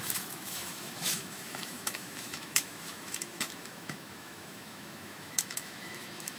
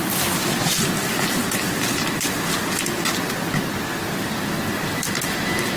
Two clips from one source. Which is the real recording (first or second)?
second